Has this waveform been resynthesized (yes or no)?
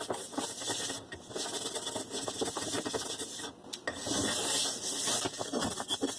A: no